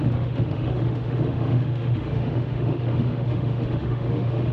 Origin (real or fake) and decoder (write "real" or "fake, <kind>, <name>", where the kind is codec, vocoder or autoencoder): fake, autoencoder, DAC-VAE